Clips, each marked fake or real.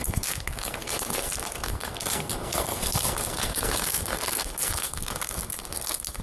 fake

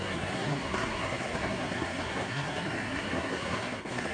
fake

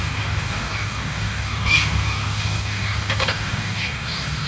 fake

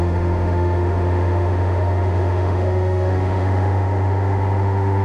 fake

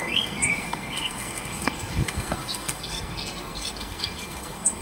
fake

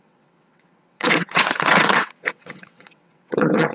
fake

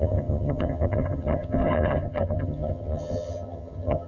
fake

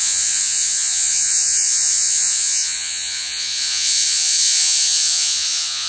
fake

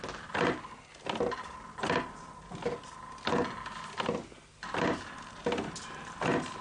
real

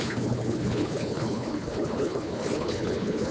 fake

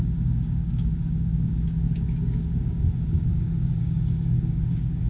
fake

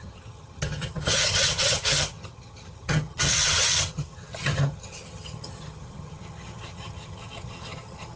fake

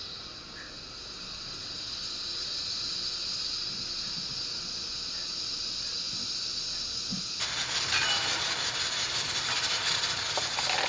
real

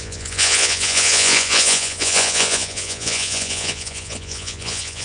fake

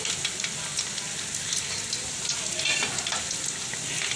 real